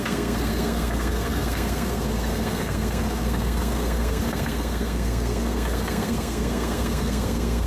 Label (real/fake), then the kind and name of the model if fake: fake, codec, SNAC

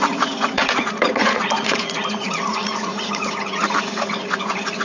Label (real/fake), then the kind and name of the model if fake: fake, vocoder, Vocos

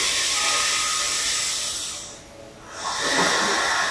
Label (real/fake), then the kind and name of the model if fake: real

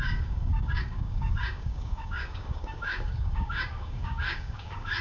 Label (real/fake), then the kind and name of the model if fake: fake, codec, DAC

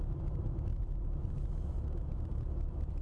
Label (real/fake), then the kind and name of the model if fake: fake, vocoder, BigVGAN v2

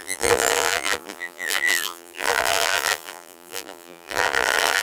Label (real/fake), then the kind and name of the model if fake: fake, vocoder, BigVGAN v2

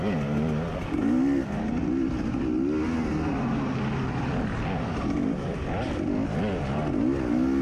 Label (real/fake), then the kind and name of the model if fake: real